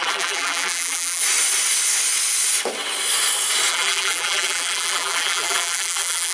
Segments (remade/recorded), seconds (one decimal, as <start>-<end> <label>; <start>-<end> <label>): 0.0-1.2 remade; 1.2-3.7 recorded; 3.7-6.3 remade